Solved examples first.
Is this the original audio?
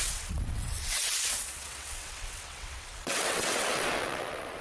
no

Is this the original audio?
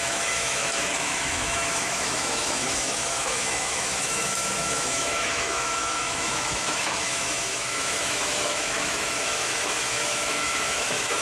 no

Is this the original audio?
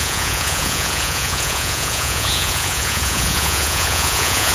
no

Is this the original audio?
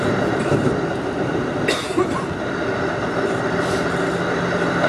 yes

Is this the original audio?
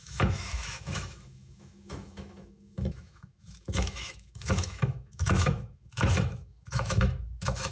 no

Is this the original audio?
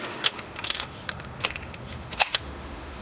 no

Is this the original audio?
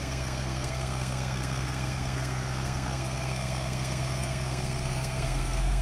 no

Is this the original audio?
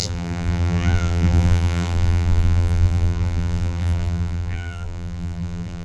no